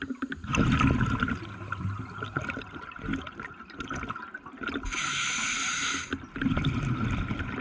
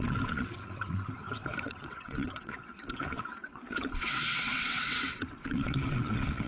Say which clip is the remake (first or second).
second